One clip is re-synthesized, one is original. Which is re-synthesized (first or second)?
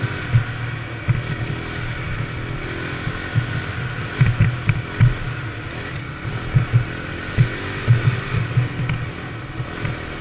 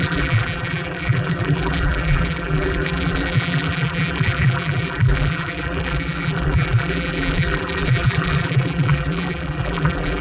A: second